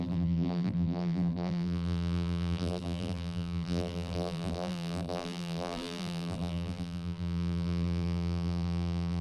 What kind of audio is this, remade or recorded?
remade